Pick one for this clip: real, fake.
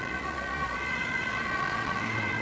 fake